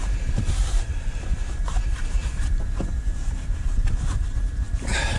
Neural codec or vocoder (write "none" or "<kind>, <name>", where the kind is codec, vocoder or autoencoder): vocoder, BigVGAN v2